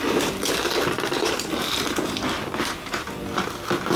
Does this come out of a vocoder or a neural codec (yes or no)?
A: yes